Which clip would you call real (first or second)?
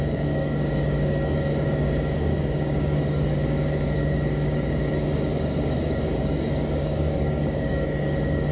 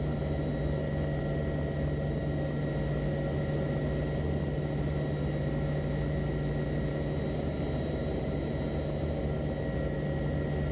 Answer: second